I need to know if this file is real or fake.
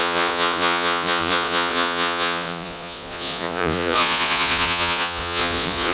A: fake